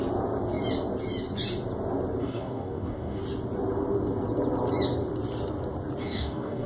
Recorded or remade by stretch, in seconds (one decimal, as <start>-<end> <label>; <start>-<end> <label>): 0.0-2.2 recorded; 2.2-3.2 remade; 3.2-6.0 recorded; 6.0-6.7 remade